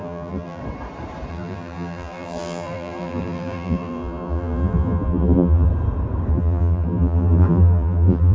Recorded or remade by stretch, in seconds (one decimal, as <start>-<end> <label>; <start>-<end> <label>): 0.0-0.6 remade; 0.6-1.3 recorded; 1.3-5.7 remade; 5.7-6.3 recorded; 6.3-8.3 remade